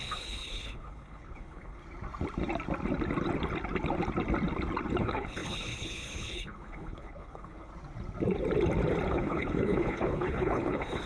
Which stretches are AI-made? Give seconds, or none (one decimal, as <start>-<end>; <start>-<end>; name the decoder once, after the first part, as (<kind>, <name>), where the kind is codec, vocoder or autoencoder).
0.0-1.8 (codec, HILCodec); 5.0-7.7; 9.1-11.1